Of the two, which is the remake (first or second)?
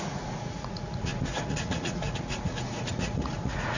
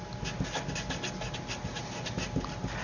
first